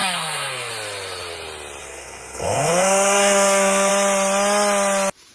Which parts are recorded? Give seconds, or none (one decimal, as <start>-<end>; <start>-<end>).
0.7-1.8; 3.9-5.3

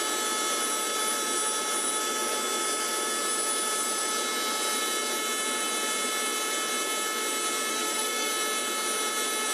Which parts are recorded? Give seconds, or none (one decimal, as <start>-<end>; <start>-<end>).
0.0-7.7; 8.3-9.5

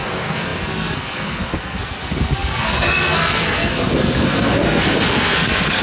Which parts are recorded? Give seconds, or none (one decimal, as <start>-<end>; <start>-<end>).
none

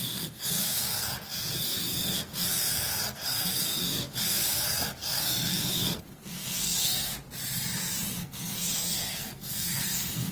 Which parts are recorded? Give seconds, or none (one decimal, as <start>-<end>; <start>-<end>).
7.1-8.2

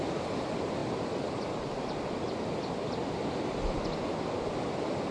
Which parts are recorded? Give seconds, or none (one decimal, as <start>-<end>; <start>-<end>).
0.0-5.1

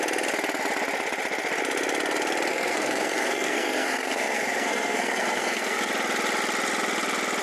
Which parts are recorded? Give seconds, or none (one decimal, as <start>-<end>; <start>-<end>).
0.0-2.5; 5.9-7.4